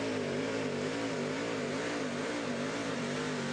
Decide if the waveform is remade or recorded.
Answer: remade